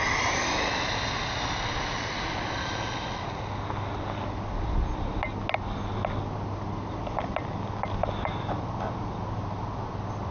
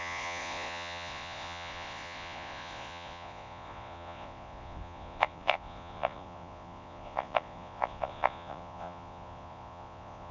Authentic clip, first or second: first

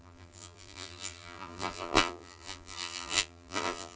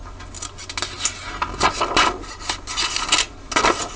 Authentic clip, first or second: second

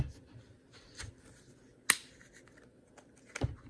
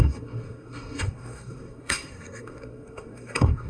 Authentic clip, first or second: first